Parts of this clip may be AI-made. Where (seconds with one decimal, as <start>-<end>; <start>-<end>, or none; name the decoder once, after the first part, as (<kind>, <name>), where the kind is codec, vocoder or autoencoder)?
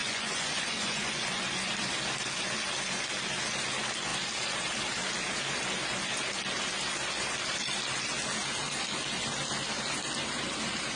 0.0-1.4 (vocoder, Vocos)